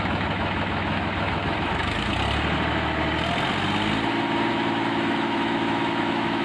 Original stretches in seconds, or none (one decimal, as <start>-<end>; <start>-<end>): 2.1-4.5